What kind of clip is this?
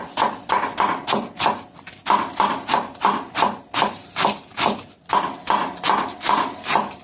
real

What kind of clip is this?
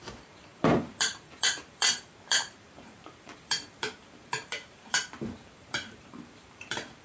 fake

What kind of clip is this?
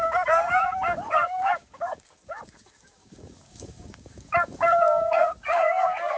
fake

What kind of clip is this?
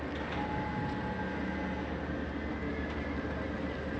real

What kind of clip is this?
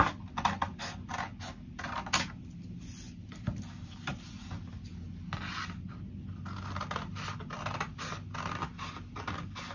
real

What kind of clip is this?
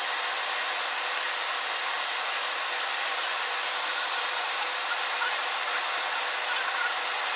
fake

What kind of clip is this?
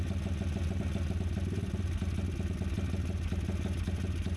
real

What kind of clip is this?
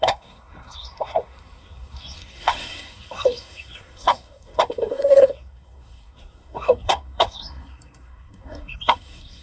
fake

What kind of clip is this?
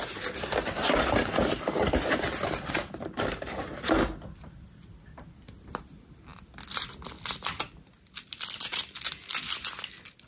real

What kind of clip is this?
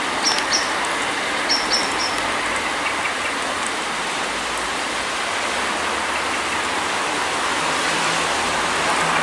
real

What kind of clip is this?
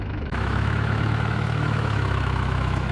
fake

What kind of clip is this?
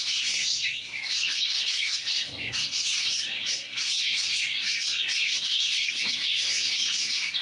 fake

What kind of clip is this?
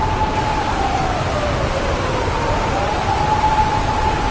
real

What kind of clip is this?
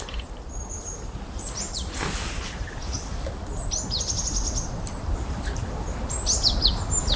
real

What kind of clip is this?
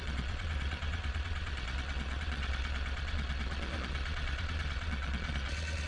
fake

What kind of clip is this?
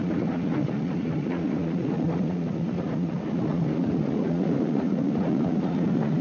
fake